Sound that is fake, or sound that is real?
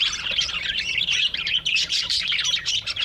fake